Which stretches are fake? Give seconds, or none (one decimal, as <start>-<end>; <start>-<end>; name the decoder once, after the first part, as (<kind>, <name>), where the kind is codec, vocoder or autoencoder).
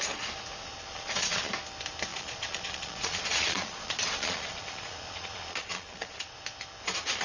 0.6-1.5 (vocoder, Vocos); 2.1-6.4